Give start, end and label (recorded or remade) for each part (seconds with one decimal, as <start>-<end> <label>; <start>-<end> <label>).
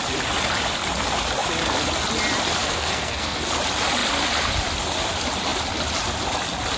0.0-2.6 recorded; 2.6-3.5 remade; 3.5-6.8 recorded